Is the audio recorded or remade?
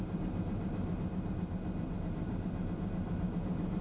remade